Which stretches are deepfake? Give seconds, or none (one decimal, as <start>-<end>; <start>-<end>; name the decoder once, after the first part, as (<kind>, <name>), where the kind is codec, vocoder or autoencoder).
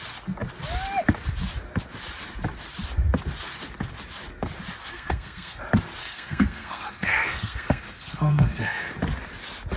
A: 4.9-5.6 (codec, SNAC); 6.0-8.9